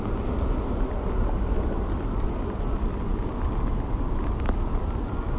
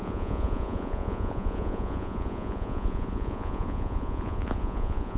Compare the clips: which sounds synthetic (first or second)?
second